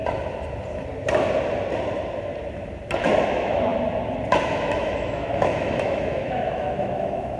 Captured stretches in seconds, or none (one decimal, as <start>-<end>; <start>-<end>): 0.0-3.3; 3.7-4.4